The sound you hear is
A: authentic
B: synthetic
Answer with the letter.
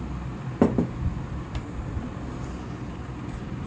A